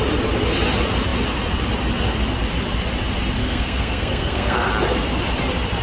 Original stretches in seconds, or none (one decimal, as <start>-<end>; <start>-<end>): 0.0-3.4; 4.7-5.8